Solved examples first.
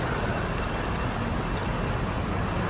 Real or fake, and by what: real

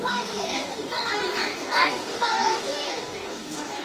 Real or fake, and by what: fake, codec, DAC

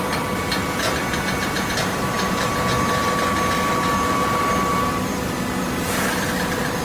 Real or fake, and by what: real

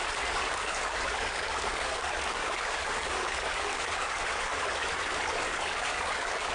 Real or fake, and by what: fake, codec, DAC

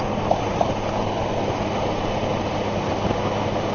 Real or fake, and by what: real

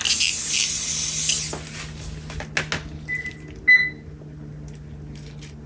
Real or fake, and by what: real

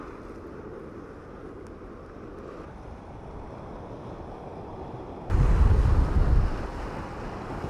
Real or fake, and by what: real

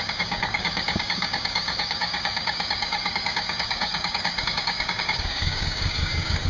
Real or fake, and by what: fake, codec, DAC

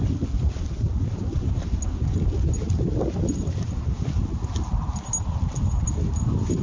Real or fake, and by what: real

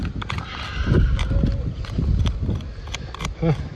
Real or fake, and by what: real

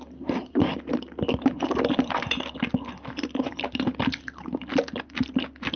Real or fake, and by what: real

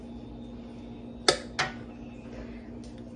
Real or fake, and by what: real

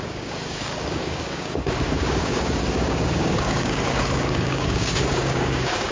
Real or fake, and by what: fake, codec, DAC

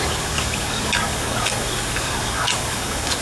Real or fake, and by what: fake, codec, DAC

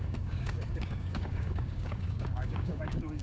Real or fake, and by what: fake, codec, DAC